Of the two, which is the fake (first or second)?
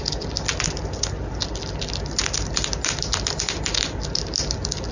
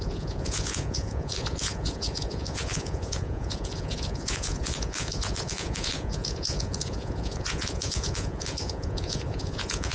second